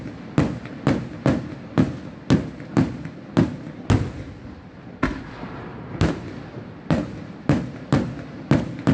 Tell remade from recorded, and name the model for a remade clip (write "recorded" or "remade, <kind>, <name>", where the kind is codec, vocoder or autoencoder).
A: recorded